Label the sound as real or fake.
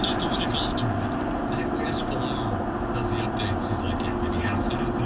real